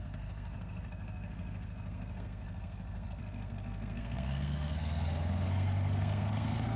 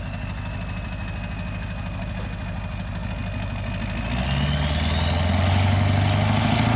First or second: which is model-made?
first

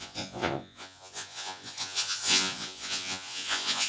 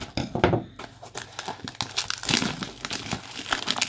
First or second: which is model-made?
first